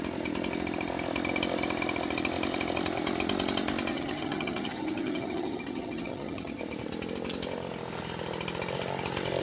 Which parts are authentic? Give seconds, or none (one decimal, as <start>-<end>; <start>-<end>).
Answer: 0.0-3.9; 6.6-9.4

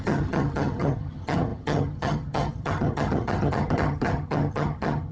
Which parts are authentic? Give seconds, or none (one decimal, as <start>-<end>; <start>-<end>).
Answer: none

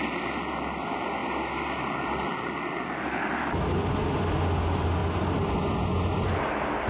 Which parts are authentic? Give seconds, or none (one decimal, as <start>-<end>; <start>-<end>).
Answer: 0.0-6.9

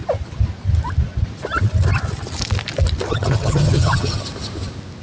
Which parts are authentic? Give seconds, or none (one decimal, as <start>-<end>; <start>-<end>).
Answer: 0.0-3.1; 4.2-5.0